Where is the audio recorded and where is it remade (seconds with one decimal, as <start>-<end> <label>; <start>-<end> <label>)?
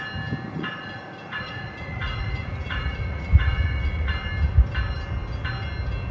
0.0-0.5 recorded; 0.5-4.1 remade; 4.1-6.1 recorded